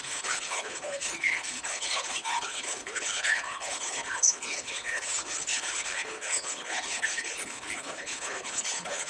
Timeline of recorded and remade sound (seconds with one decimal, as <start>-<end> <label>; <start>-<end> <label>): 0.0-9.1 remade